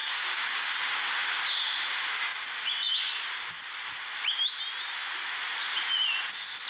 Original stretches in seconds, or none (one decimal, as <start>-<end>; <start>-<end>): 0.8-6.7